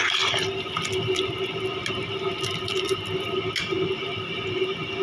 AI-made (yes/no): no